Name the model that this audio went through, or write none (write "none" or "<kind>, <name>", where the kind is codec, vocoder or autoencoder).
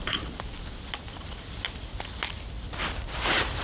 none